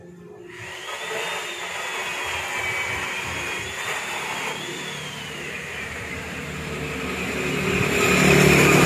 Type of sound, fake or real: real